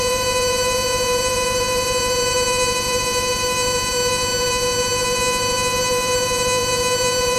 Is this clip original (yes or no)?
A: no